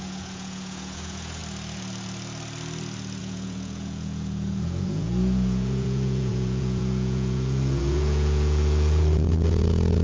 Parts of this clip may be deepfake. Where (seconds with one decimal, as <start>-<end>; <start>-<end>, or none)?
0.0-1.4; 3.2-10.0